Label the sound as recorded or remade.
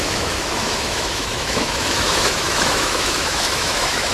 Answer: remade